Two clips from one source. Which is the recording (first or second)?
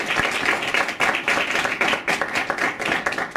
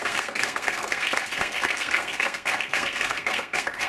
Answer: first